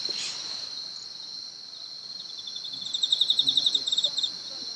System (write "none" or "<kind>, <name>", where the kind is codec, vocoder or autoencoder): none